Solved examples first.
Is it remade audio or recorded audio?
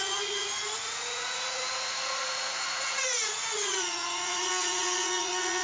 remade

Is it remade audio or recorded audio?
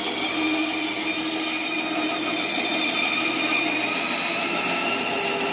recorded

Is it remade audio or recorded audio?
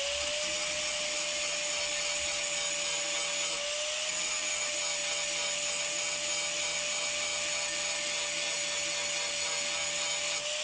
recorded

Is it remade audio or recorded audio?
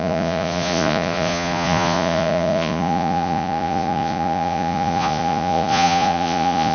remade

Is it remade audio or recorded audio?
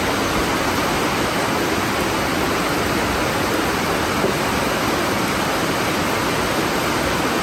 recorded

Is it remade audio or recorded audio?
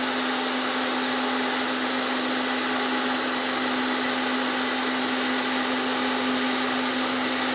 recorded